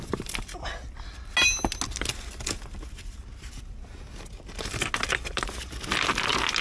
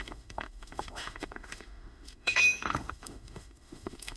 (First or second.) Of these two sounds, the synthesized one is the second